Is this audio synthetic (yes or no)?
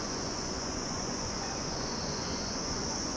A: yes